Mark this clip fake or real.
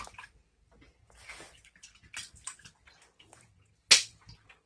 real